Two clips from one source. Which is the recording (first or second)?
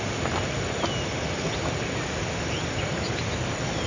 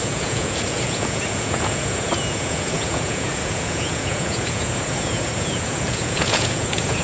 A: first